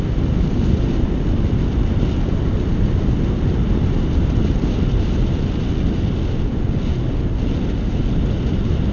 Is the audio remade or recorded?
recorded